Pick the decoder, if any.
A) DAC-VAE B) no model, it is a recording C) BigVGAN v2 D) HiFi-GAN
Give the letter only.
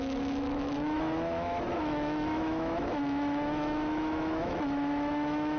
A